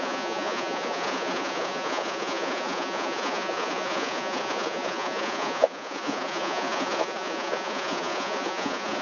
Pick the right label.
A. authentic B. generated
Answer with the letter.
B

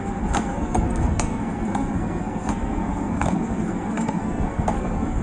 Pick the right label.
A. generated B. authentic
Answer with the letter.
A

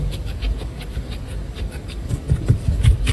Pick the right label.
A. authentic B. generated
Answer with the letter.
B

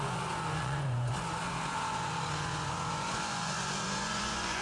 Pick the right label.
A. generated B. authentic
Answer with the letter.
A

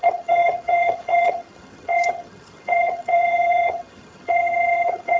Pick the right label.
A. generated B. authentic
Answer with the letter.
A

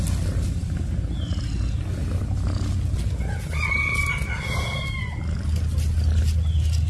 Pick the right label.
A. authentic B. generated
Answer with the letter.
A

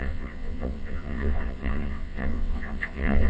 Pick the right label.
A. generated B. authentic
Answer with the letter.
A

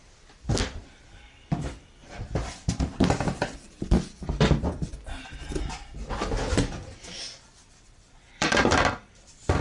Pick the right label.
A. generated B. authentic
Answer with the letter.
A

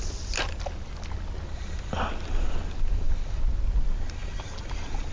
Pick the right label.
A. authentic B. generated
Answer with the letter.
A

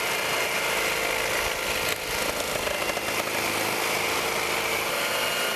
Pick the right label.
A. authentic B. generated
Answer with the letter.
A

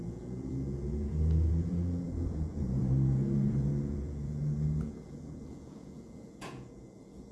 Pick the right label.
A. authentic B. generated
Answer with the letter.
B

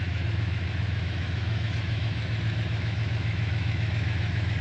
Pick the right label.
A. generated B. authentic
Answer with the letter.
A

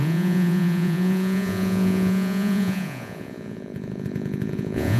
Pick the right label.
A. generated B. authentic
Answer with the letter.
A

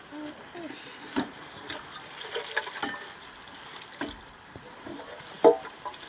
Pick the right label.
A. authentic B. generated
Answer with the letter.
A